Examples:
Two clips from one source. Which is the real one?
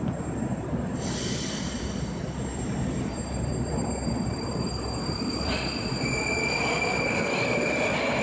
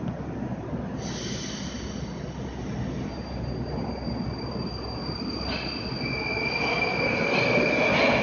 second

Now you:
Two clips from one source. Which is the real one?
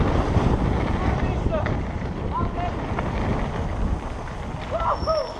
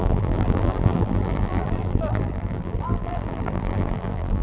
first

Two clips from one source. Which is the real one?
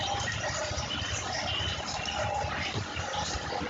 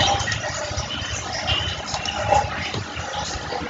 second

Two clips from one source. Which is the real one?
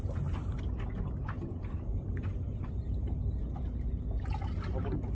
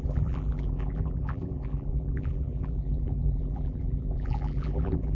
first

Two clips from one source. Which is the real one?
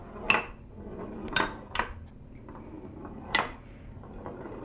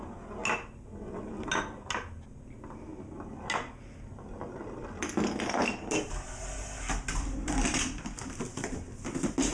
second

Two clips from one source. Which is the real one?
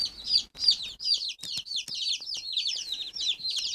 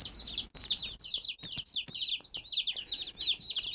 second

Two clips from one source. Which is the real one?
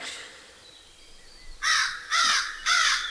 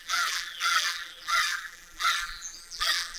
first